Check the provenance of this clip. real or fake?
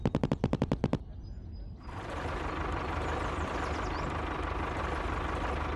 real